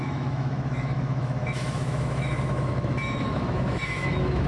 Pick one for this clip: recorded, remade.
remade